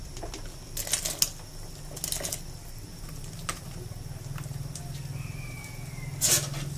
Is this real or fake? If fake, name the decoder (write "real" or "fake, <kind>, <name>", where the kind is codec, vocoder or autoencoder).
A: real